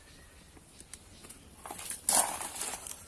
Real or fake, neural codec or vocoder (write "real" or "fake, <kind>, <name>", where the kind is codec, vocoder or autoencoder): real